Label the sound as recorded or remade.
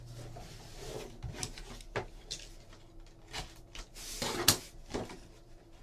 recorded